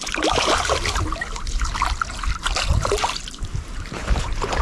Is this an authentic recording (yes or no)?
yes